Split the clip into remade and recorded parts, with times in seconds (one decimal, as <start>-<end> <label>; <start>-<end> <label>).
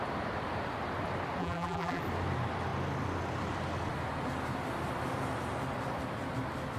0.0-1.4 recorded; 1.4-2.0 remade; 2.0-6.8 recorded